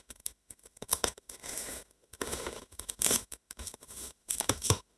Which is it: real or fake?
fake